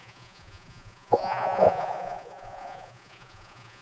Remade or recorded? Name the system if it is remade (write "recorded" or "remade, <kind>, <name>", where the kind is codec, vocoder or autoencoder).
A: remade, vocoder, Vocos